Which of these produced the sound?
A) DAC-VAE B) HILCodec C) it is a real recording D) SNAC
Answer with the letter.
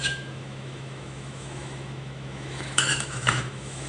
A